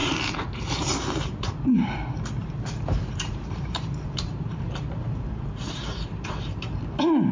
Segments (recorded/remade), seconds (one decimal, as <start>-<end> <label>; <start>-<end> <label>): 0.0-1.5 remade; 1.5-2.4 recorded; 2.4-6.8 remade; 6.8-7.3 recorded